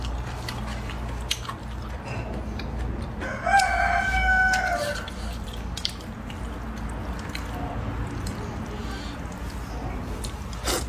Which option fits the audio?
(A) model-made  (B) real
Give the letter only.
B